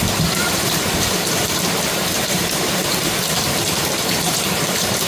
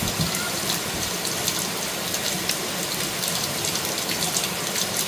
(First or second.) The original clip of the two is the second